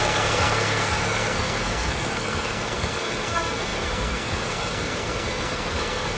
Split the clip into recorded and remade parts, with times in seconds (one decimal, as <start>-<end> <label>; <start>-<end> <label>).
0.0-6.2 remade